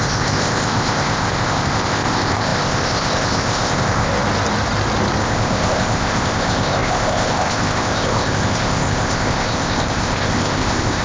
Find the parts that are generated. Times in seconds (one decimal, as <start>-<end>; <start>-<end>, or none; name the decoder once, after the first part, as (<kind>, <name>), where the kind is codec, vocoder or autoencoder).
0.0-4.1 (codec, ZipCodec); 5.2-11.0